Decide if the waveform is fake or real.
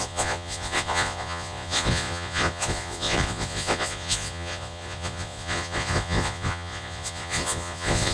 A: fake